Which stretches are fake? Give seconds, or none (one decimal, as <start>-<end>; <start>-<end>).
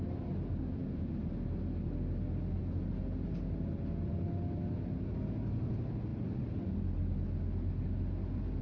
none